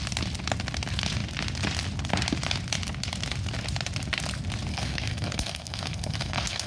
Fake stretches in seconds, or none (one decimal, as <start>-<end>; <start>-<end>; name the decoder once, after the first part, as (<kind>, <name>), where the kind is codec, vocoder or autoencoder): 4.7-6.7 (codec, SNAC)